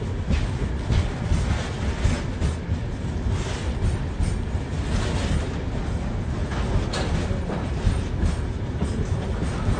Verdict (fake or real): real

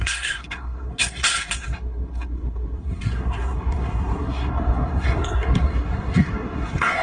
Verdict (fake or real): fake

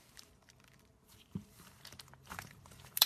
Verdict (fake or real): fake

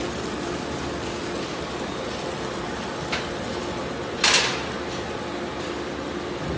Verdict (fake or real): real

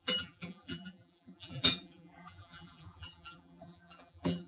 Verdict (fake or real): fake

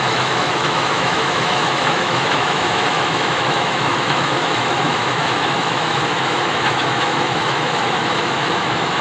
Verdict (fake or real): fake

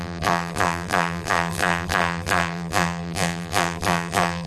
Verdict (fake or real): fake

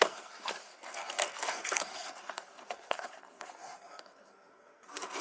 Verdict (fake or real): fake